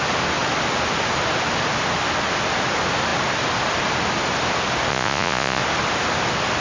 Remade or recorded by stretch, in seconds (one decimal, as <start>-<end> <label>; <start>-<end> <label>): 0.0-4.9 recorded; 4.9-5.6 remade; 5.6-6.6 recorded